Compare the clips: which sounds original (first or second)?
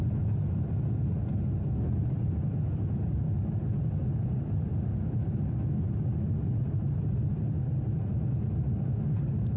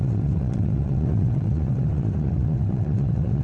first